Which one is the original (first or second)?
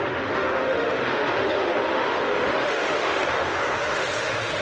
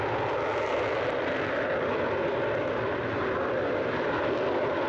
second